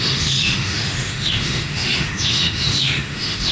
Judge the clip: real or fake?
fake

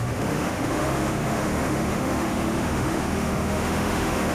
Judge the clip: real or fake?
fake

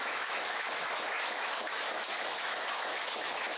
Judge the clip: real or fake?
fake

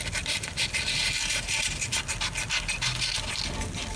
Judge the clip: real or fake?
real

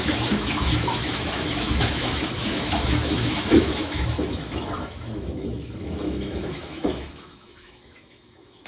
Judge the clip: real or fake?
fake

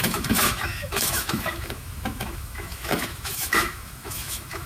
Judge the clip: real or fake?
fake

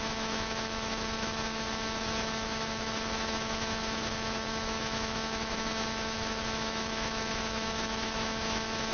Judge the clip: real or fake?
fake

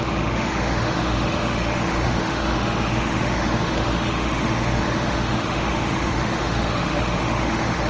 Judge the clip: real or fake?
fake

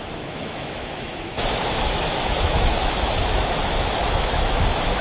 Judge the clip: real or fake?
fake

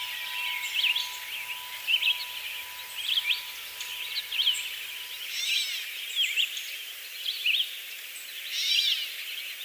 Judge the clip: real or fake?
real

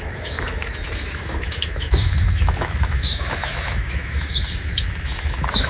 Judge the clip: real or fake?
fake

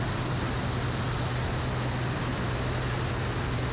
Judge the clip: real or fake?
real